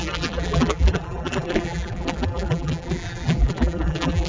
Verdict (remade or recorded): remade